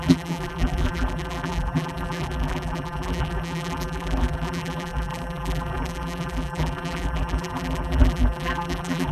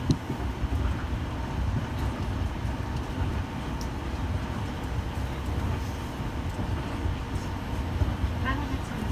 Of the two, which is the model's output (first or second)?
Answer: first